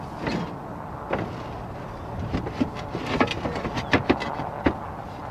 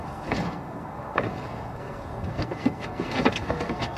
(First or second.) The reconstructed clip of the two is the second